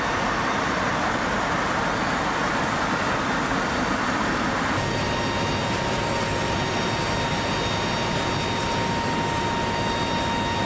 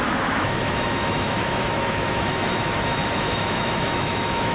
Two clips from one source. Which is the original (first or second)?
first